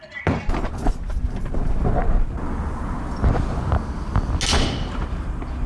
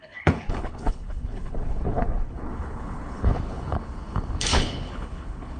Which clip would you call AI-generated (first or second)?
second